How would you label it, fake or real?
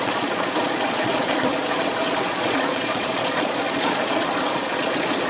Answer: fake